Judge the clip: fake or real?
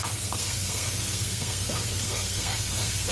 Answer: fake